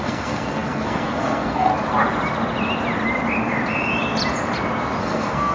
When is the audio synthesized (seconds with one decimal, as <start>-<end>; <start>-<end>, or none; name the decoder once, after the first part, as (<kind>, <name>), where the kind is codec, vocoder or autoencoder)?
0.0-1.7 (codec, SNAC); 5.0-5.5